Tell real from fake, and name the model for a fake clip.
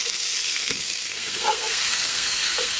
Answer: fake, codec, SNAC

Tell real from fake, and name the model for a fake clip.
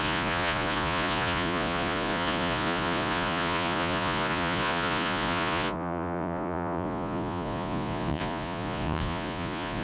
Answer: fake, vocoder, Vocos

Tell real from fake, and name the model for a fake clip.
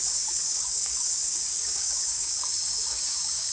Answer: fake, codec, DAC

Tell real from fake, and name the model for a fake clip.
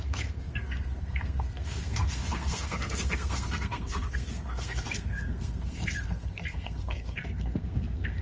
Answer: fake, codec, SNAC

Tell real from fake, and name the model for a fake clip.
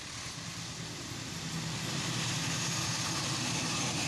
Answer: real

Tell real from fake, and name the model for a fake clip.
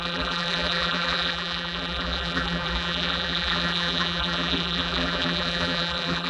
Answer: fake, vocoder, BigVGAN v2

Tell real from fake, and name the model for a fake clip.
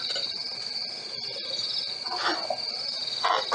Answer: real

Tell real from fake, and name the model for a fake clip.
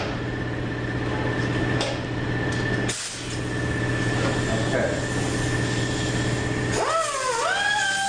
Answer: real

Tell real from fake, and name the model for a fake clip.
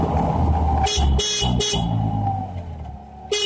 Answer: real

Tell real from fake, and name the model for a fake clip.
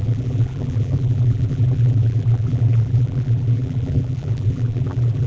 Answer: fake, vocoder, BigVGAN v2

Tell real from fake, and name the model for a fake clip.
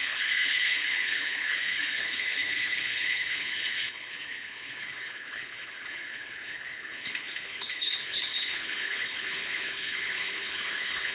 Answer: fake, codec, HILCodec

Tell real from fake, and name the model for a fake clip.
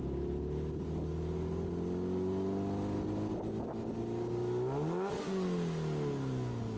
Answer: real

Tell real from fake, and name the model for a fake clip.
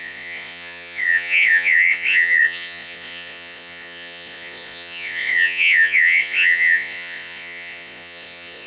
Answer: fake, vocoder, Vocos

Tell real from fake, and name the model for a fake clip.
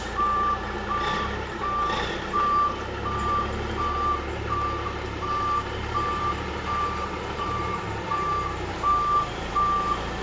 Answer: fake, vocoder, BigVGAN v2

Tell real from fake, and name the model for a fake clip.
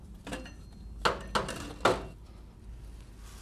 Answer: real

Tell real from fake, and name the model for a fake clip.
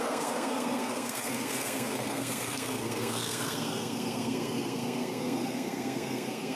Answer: fake, codec, SNAC